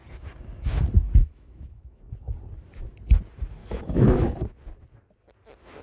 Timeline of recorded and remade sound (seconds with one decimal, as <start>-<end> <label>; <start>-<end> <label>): 0.0-1.2 recorded; 1.2-2.0 remade; 2.0-3.6 recorded; 3.6-4.4 remade; 4.4-5.8 recorded